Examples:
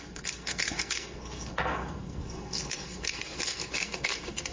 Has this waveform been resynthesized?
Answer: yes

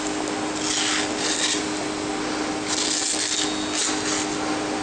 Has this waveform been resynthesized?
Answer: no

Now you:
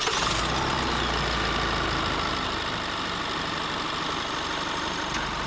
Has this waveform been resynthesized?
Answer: no